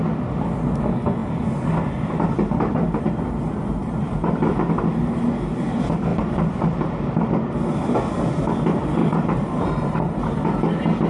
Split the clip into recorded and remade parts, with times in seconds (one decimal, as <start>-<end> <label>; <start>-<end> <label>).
0.0-3.8 recorded; 3.8-4.5 remade; 4.5-6.1 recorded; 6.1-7.3 remade; 7.3-9.0 recorded; 9.0-10.4 remade; 10.4-11.1 recorded